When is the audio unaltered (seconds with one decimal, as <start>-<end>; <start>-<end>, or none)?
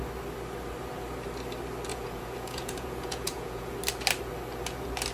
0.0-1.9; 3.7-5.1